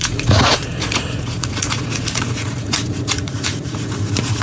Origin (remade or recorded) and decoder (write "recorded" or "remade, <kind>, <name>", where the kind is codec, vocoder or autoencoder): remade, vocoder, Vocos